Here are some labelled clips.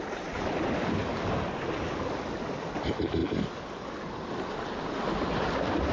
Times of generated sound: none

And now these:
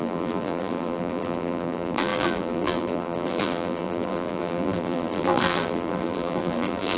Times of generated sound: 0.0-7.0 (vocoder, BigVGAN v2)